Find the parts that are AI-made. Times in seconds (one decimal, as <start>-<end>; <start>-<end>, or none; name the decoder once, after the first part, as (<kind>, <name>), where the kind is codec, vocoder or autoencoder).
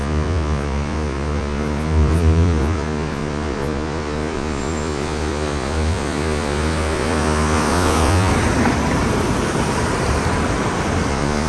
0.0-8.3 (vocoder, Vocos); 11.1-11.5